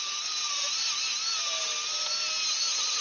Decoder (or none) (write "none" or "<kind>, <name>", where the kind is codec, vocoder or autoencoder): none